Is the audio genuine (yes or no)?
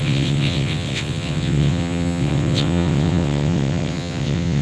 no